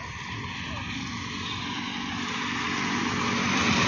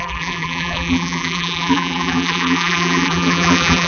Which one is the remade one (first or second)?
second